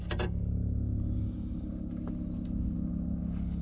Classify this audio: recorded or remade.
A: recorded